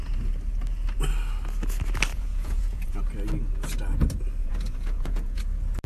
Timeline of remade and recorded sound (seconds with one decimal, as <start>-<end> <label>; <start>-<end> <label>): 0.0-2.1 recorded; 2.1-3.0 remade; 3.0-4.4 recorded; 4.4-5.4 remade; 5.4-5.9 recorded